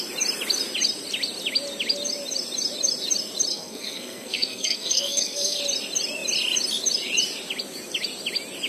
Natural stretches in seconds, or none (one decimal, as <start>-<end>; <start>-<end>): 0.0-3.5; 5.6-8.7